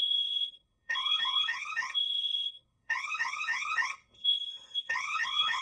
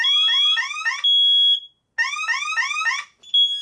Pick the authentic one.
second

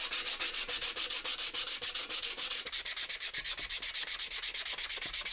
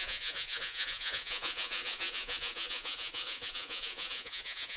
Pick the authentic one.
first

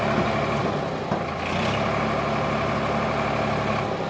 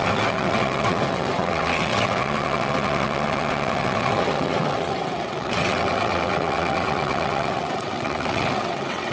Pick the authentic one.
first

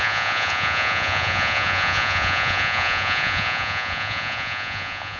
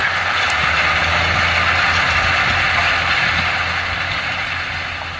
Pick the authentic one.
second